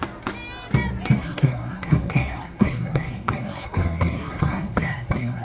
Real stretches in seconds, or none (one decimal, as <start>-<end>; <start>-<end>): 0.0-1.2